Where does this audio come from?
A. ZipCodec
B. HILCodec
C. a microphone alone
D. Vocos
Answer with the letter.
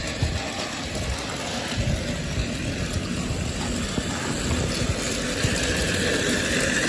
C